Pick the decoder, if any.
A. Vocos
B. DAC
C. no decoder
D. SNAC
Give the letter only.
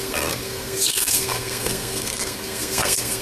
D